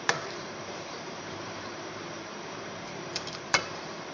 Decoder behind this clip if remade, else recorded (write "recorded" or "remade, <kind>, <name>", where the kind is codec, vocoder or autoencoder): remade, vocoder, BigVGAN v2